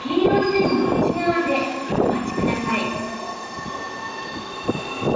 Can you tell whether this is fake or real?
real